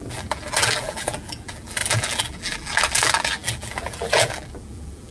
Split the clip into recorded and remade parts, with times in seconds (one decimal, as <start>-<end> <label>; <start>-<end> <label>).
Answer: 0.0-5.1 remade